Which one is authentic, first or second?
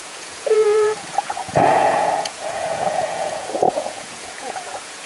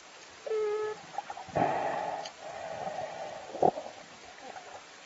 second